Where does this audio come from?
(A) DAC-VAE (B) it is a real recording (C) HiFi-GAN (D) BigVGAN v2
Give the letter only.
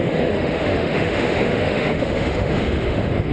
A